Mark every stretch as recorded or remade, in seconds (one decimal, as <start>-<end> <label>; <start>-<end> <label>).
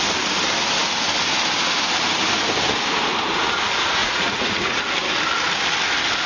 0.0-4.0 recorded; 4.0-4.8 remade; 4.8-6.3 recorded